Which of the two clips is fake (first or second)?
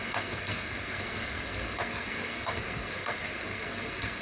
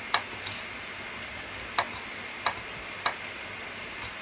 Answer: first